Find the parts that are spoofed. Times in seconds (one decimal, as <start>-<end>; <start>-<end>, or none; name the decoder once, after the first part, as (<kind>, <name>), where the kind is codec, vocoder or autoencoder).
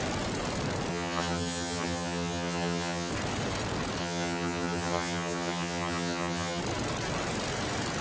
0.9-3.1 (vocoder, HiFi-GAN); 4.0-6.6